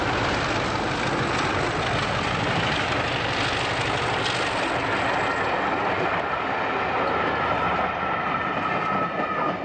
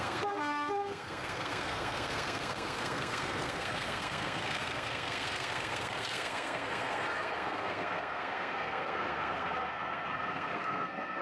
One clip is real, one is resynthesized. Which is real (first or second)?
first